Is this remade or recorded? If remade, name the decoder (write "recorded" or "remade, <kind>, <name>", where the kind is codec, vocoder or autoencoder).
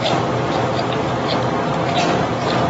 recorded